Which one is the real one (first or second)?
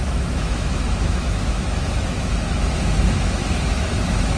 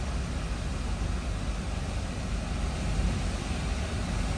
second